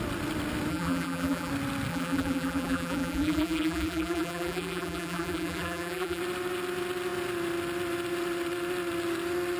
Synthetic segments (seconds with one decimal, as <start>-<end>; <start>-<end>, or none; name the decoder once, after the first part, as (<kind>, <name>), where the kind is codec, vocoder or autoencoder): 0.7-1.5 (vocoder, BigVGAN v2); 1.9-6.2